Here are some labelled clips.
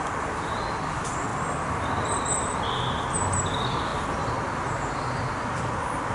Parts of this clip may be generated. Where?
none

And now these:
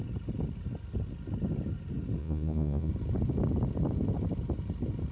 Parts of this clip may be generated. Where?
2.2-2.9